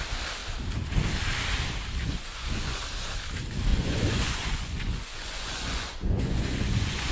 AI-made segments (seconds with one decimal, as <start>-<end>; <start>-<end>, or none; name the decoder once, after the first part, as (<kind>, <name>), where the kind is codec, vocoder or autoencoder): 2.0-2.8 (vocoder, Vocos); 3.7-7.1